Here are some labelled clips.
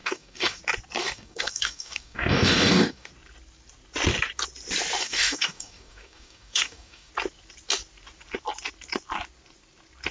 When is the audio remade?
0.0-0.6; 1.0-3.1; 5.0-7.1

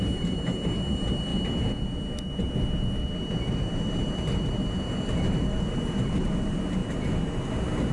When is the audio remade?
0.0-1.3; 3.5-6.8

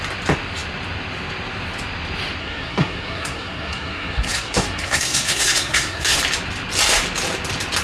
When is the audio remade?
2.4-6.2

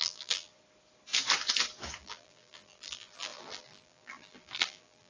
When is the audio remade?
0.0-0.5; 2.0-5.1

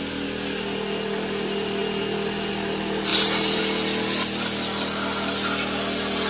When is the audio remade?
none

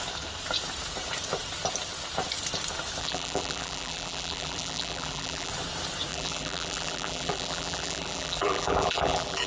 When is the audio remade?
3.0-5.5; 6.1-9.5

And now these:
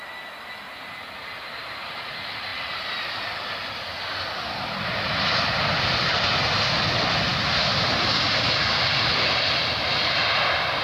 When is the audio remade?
none

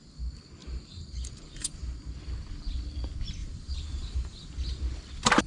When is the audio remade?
0.6-2.1; 3.4-4.5